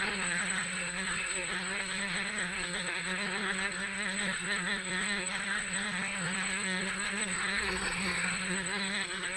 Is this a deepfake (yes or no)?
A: yes